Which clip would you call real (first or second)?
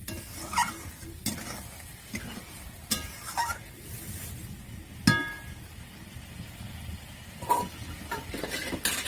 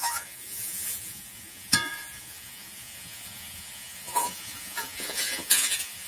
first